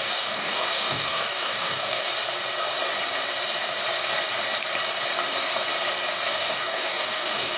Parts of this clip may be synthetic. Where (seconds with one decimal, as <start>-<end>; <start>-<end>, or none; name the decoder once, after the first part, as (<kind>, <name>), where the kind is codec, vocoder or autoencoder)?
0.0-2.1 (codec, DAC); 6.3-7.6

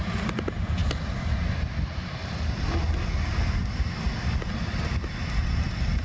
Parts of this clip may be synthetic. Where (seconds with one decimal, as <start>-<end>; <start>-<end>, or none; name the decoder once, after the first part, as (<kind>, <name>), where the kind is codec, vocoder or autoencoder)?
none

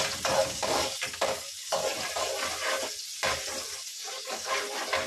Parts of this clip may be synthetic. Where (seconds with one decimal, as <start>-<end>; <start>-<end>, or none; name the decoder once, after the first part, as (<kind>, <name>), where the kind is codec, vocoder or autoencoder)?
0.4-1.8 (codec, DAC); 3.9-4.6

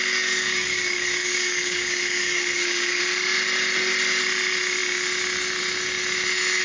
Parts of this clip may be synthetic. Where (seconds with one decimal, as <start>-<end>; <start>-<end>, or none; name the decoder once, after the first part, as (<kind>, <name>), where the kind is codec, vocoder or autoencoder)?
0.0-3.0 (codec, DAC)

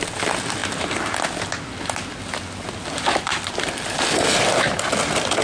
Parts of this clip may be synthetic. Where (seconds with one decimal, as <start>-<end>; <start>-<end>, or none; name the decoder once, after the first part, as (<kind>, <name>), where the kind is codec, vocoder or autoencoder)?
none